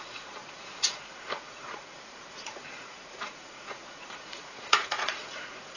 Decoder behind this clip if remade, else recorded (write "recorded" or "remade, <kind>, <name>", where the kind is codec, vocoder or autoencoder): remade, vocoder, Vocos